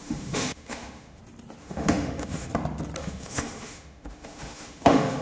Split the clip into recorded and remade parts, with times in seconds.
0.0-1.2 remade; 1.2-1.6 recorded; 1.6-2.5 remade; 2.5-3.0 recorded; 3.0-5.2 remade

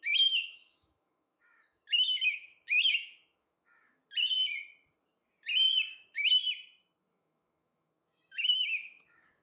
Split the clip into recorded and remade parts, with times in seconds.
0.0-4.0 remade; 4.0-5.9 recorded; 5.9-6.4 remade; 6.4-7.1 recorded; 7.1-9.4 remade

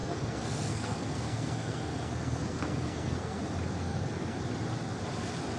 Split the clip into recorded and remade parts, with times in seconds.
0.0-3.4 remade; 3.4-3.8 recorded; 3.8-4.4 remade; 4.4-5.6 recorded